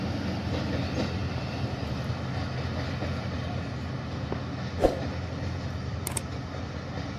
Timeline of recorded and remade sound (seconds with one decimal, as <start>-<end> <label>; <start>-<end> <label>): 0.0-7.2 recorded

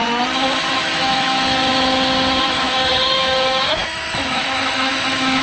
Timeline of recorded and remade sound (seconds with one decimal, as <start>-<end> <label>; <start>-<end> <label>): 0.0-0.7 recorded; 0.7-1.6 remade; 1.6-2.4 recorded; 2.4-5.4 remade

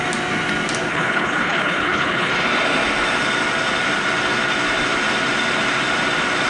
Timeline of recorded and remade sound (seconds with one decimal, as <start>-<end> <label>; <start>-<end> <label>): 0.0-0.9 recorded; 0.9-2.3 remade; 2.3-6.5 recorded

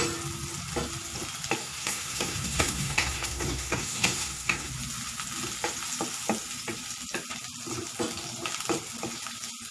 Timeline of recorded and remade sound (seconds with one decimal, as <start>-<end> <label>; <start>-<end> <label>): 0.0-1.6 recorded; 1.6-4.7 remade; 4.7-9.7 recorded

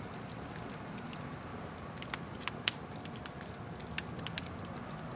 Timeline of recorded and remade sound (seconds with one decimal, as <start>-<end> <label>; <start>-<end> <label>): 0.0-5.2 recorded

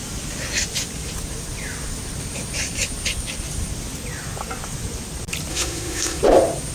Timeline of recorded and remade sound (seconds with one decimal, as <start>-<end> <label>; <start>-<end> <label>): 0.0-5.5 recorded; 5.5-6.2 remade; 6.2-6.7 recorded

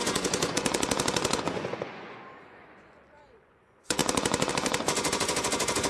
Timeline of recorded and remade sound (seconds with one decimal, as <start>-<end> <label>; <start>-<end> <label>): 0.0-5.9 remade